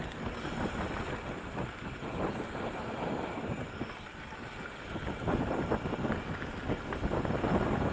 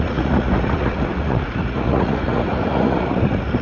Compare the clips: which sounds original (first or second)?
first